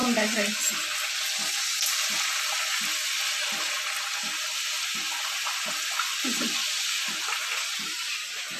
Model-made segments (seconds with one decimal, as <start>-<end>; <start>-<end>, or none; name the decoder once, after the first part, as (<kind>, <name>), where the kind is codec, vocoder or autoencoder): none